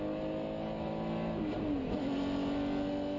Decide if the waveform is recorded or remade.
recorded